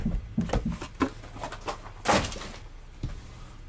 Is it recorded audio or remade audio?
recorded